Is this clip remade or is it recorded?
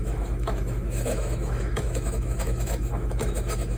remade